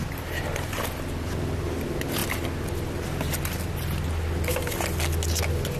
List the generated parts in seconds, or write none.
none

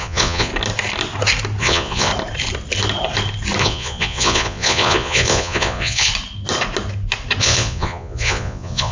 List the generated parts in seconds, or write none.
0.0-0.5 (vocoder, Vocos); 1.6-2.1; 3.6-6.1; 7.4-8.9

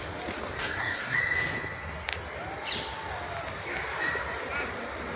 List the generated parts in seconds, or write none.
0.6-1.2 (codec, SNAC)

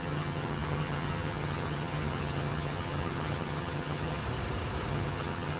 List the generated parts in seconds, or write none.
0.0-4.2 (vocoder, HiFi-GAN); 4.9-5.6

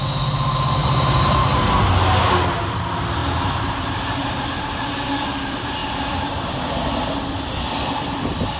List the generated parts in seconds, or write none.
0.8-1.9 (vocoder, BigVGAN v2); 3.2-4.0

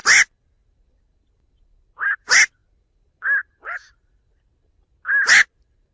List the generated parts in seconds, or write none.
none